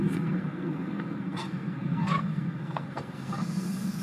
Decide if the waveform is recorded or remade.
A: remade